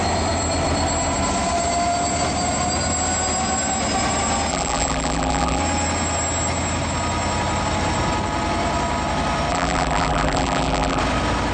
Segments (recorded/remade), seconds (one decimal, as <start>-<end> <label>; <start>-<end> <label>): 0.0-4.5 recorded; 4.5-5.6 remade; 5.6-9.5 recorded; 9.5-11.0 remade; 11.0-11.5 recorded